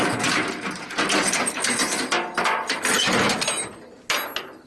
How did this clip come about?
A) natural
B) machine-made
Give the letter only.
A